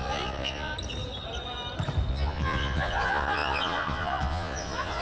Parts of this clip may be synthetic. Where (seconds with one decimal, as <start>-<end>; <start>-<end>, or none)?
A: 0.0-0.7; 2.1-5.0